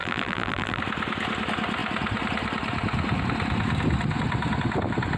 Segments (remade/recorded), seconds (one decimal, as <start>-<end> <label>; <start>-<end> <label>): 0.0-0.8 remade; 0.8-5.2 recorded